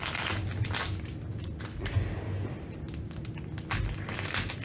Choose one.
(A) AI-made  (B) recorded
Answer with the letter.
B